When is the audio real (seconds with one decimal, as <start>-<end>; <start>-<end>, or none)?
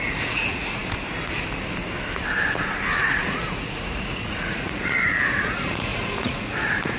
0.8-3.0